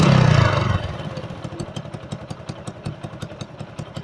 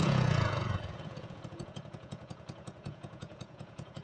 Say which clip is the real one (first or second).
first